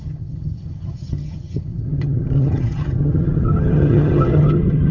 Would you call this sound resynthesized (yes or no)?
yes